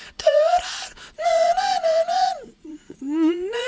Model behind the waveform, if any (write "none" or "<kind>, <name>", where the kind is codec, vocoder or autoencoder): vocoder, Vocos